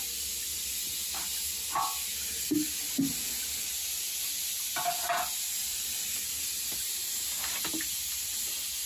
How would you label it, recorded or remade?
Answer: recorded